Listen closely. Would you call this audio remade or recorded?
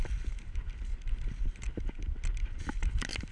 recorded